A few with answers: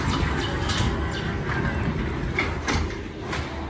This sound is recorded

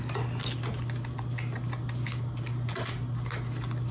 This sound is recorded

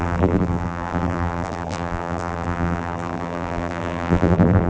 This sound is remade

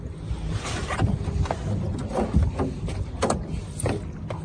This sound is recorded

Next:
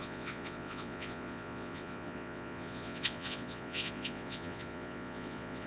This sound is remade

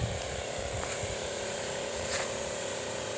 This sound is remade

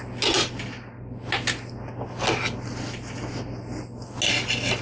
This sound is recorded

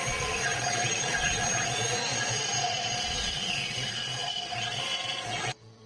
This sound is remade